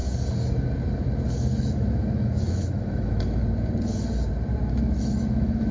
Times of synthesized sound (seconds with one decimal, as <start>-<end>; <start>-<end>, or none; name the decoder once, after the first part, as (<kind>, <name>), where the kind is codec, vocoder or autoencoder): 1.4-3.4 (autoencoder, DAC-VAE); 4.7-5.7